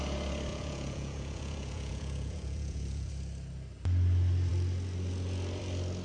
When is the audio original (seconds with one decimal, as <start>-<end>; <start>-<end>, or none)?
0.0-0.5; 3.1-6.0